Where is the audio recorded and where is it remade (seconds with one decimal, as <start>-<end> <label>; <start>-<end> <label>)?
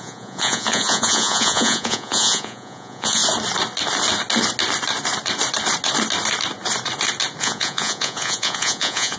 0.0-3.2 remade; 3.2-7.4 recorded; 7.4-9.2 remade